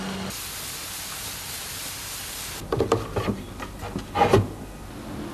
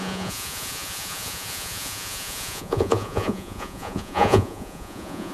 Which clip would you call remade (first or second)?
second